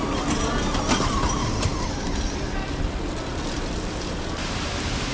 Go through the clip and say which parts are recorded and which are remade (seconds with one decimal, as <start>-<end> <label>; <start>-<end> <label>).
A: 0.0-5.1 recorded